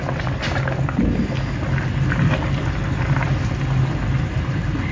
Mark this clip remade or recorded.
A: recorded